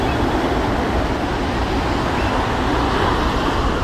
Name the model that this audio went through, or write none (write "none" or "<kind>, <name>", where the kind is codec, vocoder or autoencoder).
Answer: none